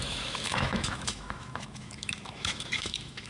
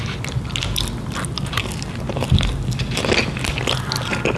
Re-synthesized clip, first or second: first